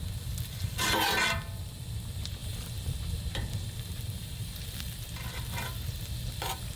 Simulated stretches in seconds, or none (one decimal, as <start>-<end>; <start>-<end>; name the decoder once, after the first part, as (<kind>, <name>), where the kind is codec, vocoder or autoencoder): none